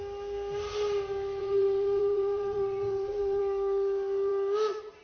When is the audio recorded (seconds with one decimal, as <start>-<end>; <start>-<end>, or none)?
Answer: 0.0-1.4; 3.4-5.0